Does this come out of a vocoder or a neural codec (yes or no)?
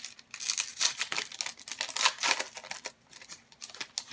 no